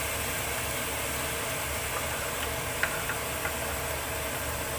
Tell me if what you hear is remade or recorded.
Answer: recorded